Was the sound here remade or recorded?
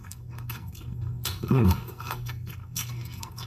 remade